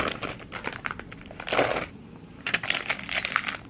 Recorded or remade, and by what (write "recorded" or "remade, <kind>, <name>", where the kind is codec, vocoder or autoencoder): recorded